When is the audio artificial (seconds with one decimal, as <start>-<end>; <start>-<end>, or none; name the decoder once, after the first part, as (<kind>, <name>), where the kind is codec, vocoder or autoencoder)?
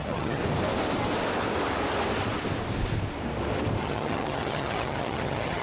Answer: 0.0-0.4 (vocoder, HiFi-GAN); 3.8-5.6